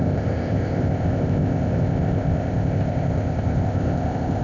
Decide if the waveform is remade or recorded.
remade